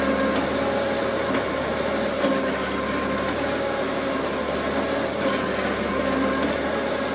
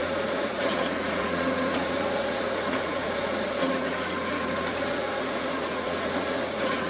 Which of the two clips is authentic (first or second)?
first